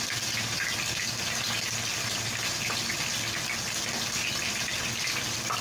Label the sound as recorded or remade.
recorded